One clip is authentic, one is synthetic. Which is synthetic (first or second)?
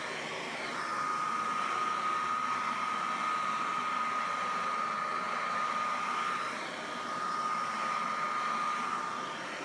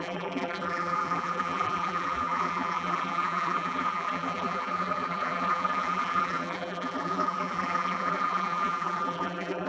second